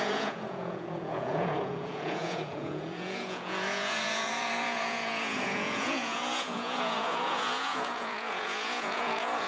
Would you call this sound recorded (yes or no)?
no